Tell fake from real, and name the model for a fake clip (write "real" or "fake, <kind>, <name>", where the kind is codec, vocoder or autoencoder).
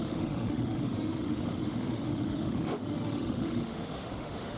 fake, autoencoder, DAC-VAE